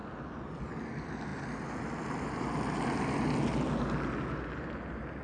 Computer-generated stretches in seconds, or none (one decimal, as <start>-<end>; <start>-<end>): none